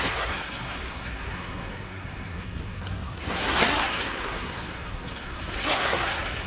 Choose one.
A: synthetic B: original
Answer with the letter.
A